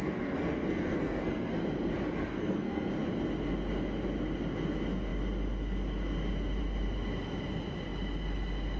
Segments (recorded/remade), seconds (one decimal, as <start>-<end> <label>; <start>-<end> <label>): 0.0-1.6 remade; 1.6-2.3 recorded; 2.3-2.9 remade; 2.9-8.8 recorded